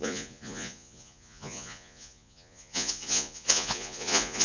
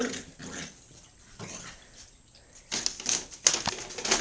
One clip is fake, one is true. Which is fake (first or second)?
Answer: first